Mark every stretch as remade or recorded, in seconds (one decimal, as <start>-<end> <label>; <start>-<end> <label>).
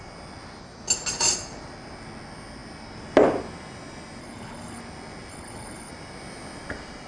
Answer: 0.0-4.2 recorded; 4.2-4.8 remade; 4.8-5.3 recorded; 5.3-5.9 remade; 5.9-7.1 recorded